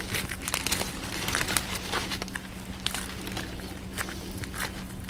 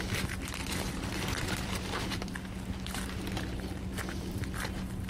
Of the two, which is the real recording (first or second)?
first